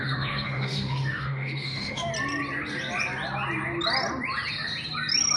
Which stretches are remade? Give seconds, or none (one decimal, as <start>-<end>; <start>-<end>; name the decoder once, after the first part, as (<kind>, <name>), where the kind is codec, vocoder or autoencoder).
0.0-2.1 (autoencoder, DAC-VAE)